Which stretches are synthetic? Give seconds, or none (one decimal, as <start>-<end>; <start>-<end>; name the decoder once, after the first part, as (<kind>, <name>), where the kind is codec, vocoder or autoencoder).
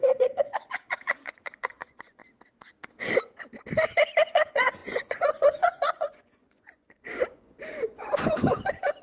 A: 0.0-2.2 (vocoder, Vocos); 4.3-9.0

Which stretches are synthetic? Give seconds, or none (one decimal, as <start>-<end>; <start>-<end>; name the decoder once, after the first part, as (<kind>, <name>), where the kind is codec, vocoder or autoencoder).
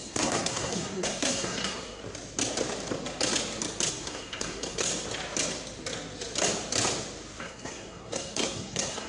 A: 0.0-2.0 (codec, SNAC); 3.9-4.9; 7.4-9.1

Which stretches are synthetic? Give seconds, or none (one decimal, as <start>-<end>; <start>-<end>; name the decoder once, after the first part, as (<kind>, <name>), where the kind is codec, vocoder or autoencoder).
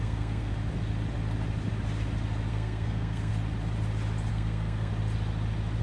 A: 0.0-0.5 (codec, SNAC); 2.5-3.3; 4.3-4.9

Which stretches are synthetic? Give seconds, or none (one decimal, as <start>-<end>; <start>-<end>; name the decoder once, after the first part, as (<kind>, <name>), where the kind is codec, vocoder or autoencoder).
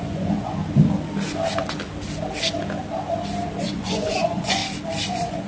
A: 0.0-0.6 (vocoder, Vocos); 3.6-4.6; 5.1-5.5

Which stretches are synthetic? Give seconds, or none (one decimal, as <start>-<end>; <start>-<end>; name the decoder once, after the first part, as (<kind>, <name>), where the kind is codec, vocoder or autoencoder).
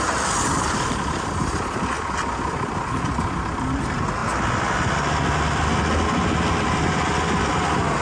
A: none